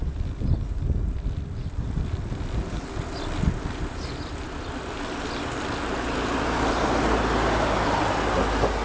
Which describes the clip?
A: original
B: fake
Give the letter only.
A